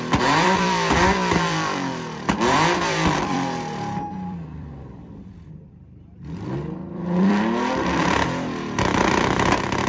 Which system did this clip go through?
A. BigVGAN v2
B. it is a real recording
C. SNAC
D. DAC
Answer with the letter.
A